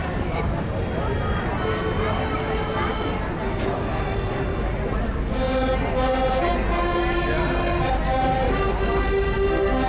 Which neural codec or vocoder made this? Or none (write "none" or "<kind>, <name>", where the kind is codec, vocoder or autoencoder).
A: none